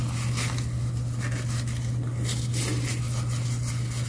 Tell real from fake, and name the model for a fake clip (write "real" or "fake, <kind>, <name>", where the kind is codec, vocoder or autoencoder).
real